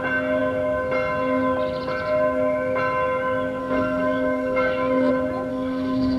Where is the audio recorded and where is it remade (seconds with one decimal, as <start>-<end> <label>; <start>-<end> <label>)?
0.0-3.6 recorded; 3.6-5.1 remade; 5.1-5.5 recorded; 5.5-6.2 remade